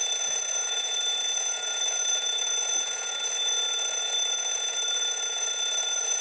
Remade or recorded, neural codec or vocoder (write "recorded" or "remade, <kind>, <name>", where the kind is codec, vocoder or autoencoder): remade, vocoder, Vocos